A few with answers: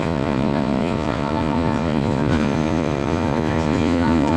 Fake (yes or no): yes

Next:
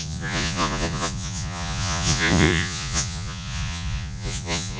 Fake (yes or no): yes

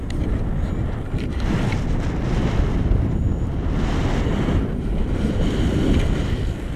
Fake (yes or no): no